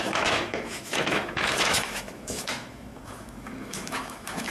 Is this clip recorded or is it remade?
remade